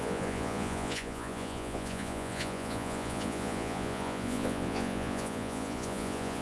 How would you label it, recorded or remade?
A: remade